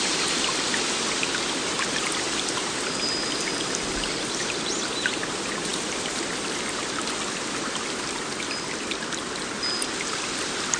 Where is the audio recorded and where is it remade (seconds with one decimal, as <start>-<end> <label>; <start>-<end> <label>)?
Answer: 0.0-10.8 recorded